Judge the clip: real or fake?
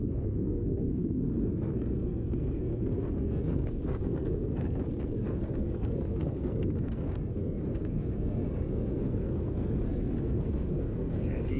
fake